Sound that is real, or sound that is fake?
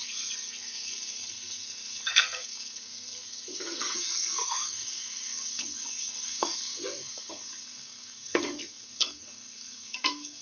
fake